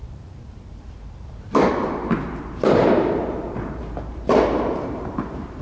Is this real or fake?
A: fake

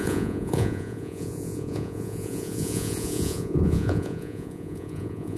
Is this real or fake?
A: fake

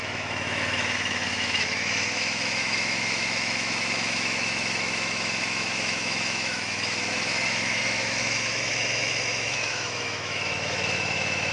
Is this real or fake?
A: fake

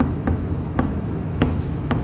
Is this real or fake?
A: fake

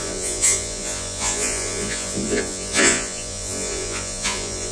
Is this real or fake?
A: fake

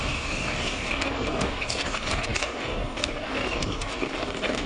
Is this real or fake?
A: fake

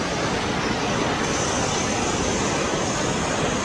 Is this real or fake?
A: real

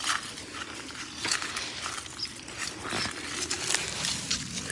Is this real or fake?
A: real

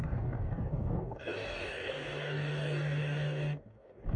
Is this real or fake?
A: fake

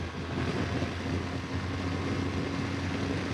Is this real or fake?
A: real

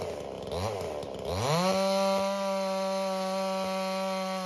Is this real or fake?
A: real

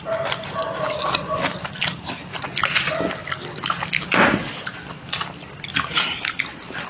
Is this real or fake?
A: real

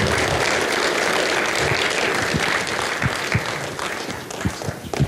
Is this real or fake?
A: real